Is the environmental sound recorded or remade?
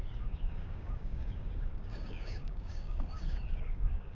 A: remade